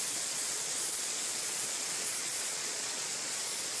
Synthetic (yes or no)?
yes